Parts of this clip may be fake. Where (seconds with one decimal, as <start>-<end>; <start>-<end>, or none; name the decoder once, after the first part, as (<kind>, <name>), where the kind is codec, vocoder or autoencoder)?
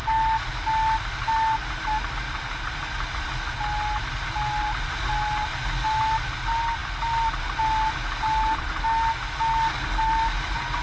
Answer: none